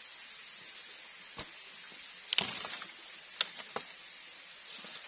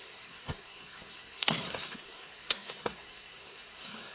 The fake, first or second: second